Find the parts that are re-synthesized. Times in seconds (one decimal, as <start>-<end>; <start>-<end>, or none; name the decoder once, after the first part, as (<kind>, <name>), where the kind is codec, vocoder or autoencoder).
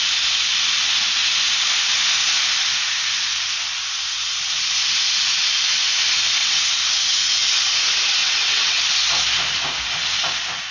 6.4-6.9 (vocoder, WaveNeXt); 8.2-8.8